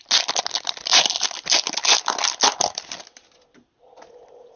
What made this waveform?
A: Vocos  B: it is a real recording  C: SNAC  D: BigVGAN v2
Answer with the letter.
B